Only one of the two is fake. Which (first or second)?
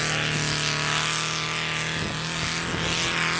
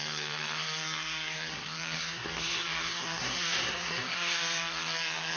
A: second